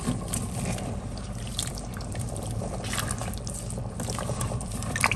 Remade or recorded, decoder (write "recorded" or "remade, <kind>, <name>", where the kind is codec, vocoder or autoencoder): remade, vocoder, BigVGAN v2